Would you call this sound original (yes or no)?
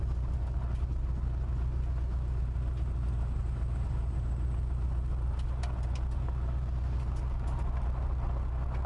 yes